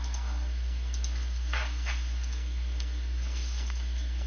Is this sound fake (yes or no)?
yes